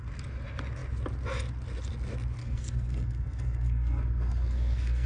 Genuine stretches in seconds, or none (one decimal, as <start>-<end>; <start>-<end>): 0.0-2.4